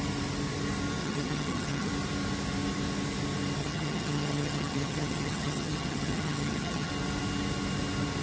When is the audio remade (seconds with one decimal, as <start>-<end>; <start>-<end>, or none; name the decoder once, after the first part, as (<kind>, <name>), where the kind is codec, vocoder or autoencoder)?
1.0-1.9 (vocoder, HiFi-GAN); 3.6-6.9

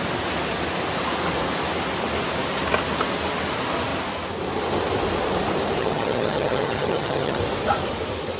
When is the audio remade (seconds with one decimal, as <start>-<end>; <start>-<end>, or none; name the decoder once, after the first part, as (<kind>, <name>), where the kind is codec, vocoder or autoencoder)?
5.8-7.4 (vocoder, HiFi-GAN)

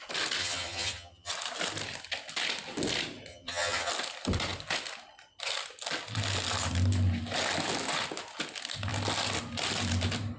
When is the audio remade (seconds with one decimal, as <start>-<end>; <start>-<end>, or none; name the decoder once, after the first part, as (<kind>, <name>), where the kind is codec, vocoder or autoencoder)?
0.4-1.3 (vocoder, HiFi-GAN); 3.3-3.9

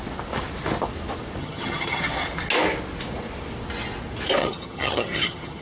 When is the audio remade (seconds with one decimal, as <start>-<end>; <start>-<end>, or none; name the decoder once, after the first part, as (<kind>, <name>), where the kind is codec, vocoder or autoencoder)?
1.4-2.0 (vocoder, HiFi-GAN); 4.4-5.6

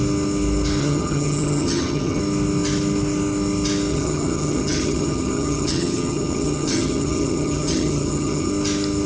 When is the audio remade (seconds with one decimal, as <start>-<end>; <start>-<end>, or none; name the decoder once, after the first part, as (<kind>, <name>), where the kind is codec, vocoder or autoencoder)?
0.8-2.2 (vocoder, HiFi-GAN); 3.9-8.5